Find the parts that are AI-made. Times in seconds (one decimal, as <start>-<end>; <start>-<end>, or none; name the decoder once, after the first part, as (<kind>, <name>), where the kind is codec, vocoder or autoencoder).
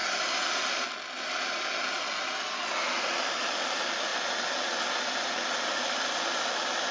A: none